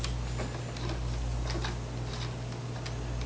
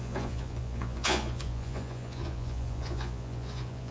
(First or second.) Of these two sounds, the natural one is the first